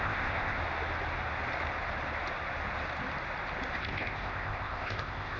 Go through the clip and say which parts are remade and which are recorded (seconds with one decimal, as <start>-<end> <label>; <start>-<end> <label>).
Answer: 0.0-0.6 remade; 0.6-3.8 recorded; 3.8-5.4 remade